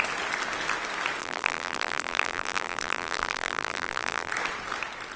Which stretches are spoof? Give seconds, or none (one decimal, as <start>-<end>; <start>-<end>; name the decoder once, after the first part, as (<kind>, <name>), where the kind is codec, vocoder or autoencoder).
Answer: 1.2-4.3 (vocoder, BigVGAN v2)